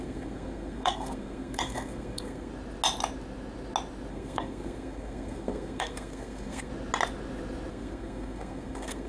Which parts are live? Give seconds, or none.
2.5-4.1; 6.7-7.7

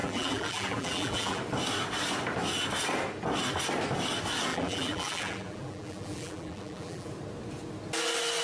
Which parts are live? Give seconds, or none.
1.4-4.5; 7.1-8.4

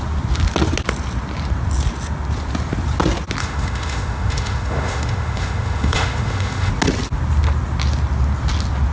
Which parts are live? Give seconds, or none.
0.0-3.4; 6.7-8.9